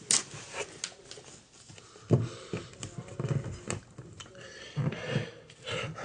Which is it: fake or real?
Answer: real